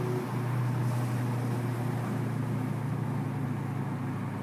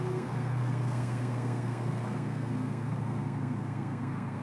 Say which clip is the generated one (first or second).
second